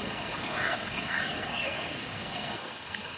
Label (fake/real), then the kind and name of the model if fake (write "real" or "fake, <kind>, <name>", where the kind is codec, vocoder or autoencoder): fake, codec, SNAC